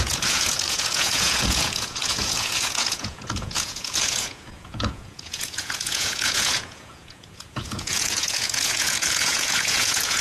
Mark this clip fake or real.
fake